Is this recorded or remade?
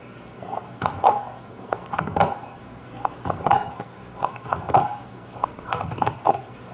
remade